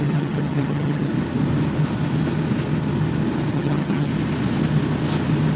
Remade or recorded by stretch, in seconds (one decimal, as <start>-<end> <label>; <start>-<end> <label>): 0.0-1.1 remade; 1.1-3.5 recorded; 3.5-4.1 remade; 4.1-5.6 recorded